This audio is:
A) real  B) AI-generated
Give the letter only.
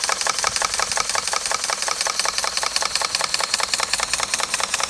A